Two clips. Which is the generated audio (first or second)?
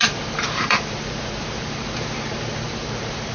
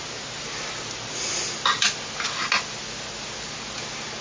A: first